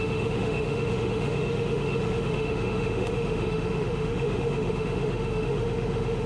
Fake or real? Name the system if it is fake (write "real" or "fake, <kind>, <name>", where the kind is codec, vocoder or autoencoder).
fake, autoencoder, DAC-VAE